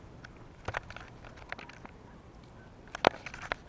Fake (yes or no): no